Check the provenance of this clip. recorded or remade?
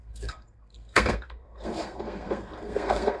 remade